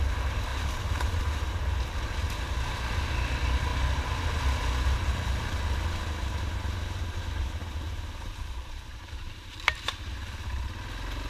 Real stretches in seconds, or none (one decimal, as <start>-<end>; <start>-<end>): 0.0-0.5; 1.6-7.6; 10.1-11.3